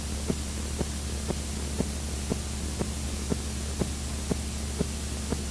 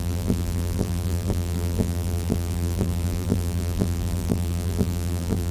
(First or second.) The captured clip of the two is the first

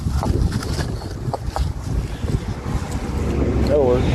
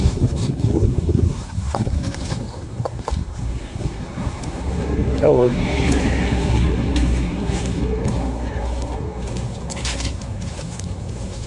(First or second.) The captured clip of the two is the first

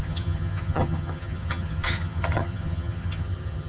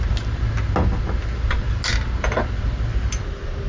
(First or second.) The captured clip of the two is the second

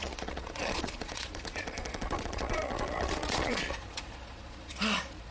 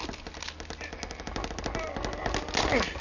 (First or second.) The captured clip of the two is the second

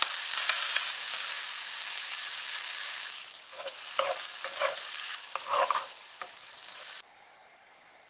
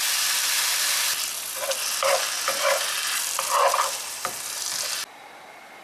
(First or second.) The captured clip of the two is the second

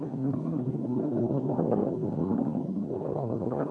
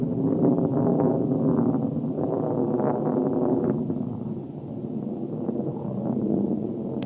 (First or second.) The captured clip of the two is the second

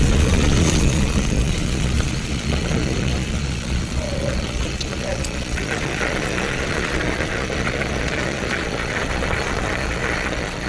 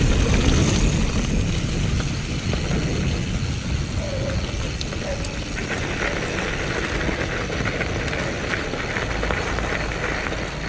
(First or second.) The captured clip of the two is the second